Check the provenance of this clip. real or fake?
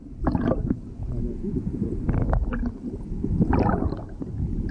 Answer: real